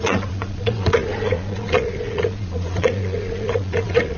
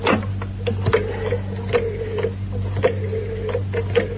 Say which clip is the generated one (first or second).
first